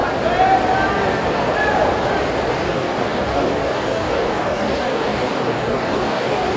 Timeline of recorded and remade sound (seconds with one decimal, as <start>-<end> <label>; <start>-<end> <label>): 0.0-2.5 recorded; 2.5-6.6 remade

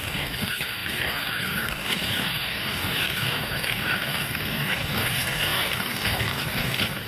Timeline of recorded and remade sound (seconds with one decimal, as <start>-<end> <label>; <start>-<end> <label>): 0.0-7.1 remade